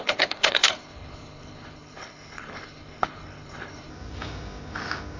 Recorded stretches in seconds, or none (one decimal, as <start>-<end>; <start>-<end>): 3.9-5.2